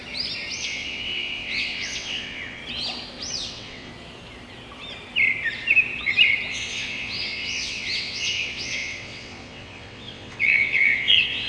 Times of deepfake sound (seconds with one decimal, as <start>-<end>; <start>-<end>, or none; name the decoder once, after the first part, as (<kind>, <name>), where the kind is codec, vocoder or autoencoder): 0.6-2.6 (vocoder, WaveNeXt); 3.5-3.9; 6.5-11.5

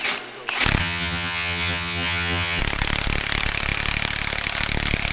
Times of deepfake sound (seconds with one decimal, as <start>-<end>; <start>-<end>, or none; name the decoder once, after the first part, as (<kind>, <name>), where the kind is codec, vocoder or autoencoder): 0.8-2.6 (vocoder, HiFi-GAN)